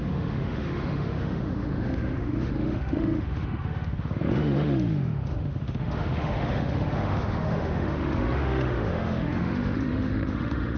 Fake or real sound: fake